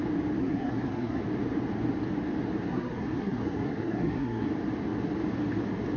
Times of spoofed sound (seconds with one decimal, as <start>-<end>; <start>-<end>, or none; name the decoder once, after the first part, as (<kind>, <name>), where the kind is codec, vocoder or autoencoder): 0.4-1.2 (codec, SNAC); 2.7-4.5